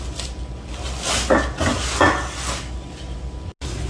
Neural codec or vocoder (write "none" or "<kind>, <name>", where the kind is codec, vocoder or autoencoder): none